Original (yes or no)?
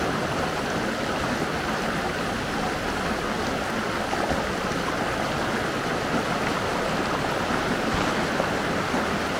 yes